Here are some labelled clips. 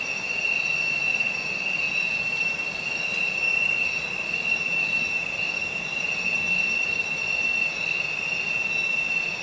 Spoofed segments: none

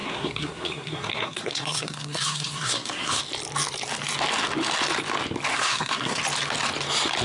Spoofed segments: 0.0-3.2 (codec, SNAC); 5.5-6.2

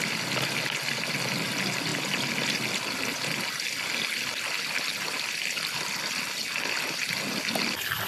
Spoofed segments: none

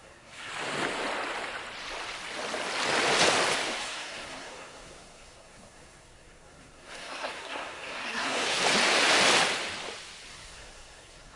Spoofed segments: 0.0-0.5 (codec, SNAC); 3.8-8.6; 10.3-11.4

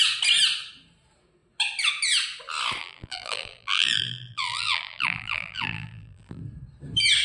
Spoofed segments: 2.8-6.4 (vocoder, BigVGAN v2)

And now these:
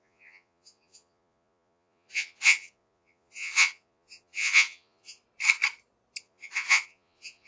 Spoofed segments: 0.0-5.2 (vocoder, Vocos); 6.2-7.5

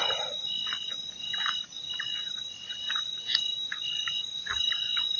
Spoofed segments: none

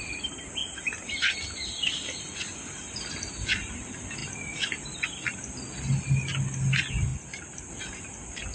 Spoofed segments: none